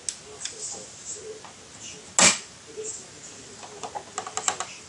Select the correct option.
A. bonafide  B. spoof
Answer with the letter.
A